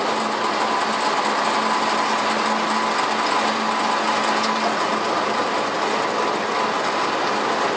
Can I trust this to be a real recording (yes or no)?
yes